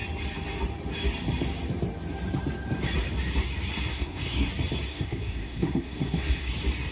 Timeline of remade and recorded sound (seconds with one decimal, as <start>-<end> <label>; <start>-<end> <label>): 0.0-3.9 recorded; 3.9-4.5 remade; 4.5-4.9 recorded; 4.9-6.5 remade; 6.5-6.9 recorded